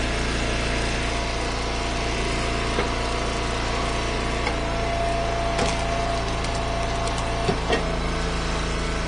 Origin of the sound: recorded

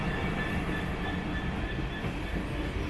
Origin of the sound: recorded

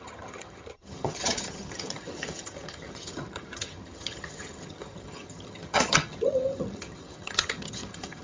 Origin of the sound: remade